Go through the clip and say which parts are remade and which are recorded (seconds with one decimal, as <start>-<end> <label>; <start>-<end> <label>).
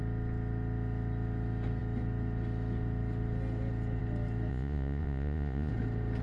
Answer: 0.0-4.5 recorded; 4.5-5.7 remade; 5.7-6.2 recorded